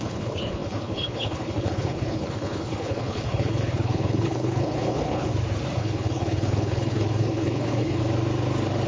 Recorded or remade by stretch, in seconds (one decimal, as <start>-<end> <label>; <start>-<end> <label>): 0.0-5.3 remade; 5.3-5.8 recorded; 5.8-8.0 remade; 8.0-8.9 recorded

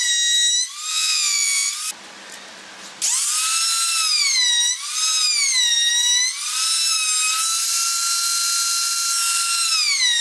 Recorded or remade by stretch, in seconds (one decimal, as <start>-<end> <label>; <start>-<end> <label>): 0.0-0.9 recorded; 0.9-1.7 remade; 1.7-10.2 recorded

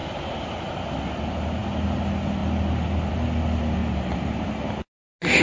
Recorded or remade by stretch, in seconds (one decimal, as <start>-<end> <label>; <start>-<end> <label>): 0.0-0.7 remade; 0.7-3.8 recorded; 3.8-4.5 remade; 4.5-5.4 recorded

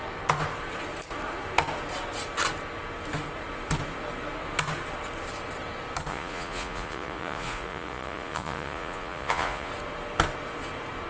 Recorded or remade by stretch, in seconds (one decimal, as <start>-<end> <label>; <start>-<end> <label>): 0.0-6.1 recorded; 6.1-9.7 remade; 9.7-11.1 recorded

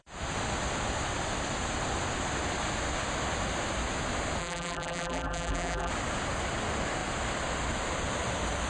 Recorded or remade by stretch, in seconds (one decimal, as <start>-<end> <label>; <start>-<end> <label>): 0.0-4.4 recorded; 4.4-5.9 remade; 5.9-8.7 recorded

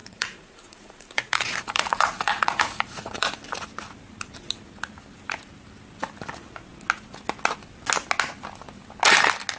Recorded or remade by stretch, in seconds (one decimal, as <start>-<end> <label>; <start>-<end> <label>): 0.0-3.3 remade; 3.3-9.6 recorded